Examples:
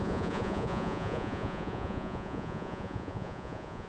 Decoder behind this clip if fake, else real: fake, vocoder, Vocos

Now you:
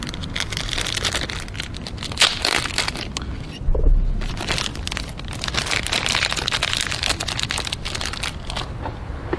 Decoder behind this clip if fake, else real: real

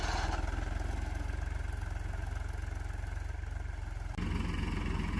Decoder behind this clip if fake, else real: real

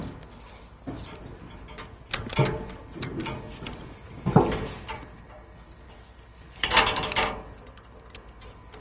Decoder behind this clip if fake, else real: real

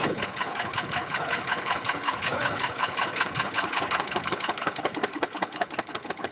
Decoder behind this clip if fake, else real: fake, codec, HILCodec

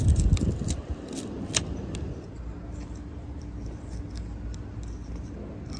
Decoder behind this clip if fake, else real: real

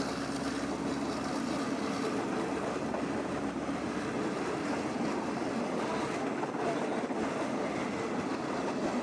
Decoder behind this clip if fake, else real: real